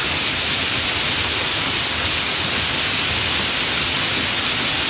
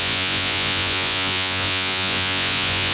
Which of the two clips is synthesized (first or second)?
second